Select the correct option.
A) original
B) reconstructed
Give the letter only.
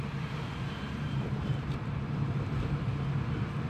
B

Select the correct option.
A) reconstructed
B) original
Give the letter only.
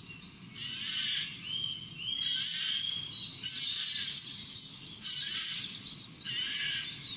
B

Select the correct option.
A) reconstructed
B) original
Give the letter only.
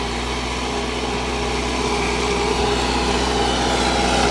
B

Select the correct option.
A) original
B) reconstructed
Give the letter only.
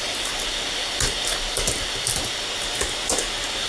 A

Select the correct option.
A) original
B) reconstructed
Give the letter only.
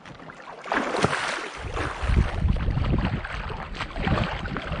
A